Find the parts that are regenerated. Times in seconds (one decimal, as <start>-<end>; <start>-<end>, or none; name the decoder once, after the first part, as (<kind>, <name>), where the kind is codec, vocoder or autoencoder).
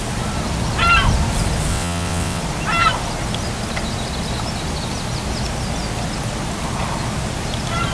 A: 1.7-2.4 (vocoder, WaveNeXt)